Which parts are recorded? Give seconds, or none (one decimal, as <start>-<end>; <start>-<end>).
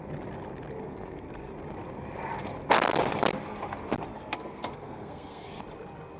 0.0-0.8; 1.5-4.1; 5.6-6.2